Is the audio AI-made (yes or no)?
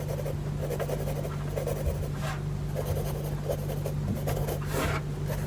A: no